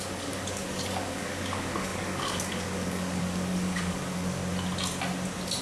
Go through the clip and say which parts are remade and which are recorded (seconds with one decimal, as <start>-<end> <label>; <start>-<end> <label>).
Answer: 0.0-4.4 remade; 4.4-5.6 recorded